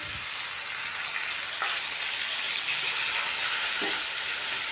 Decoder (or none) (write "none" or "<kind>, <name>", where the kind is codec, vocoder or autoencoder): none